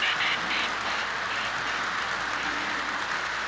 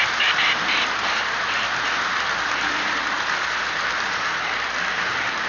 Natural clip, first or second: first